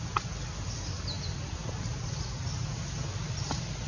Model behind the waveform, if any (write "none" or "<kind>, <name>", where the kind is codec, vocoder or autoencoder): none